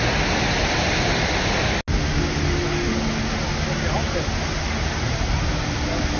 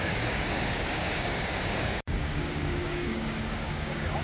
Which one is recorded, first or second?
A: first